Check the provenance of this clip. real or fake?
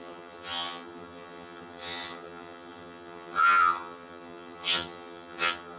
fake